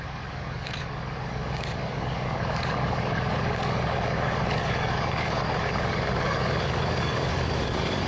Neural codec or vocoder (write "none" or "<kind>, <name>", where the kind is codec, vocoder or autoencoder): codec, DAC